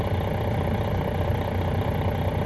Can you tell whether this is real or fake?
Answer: real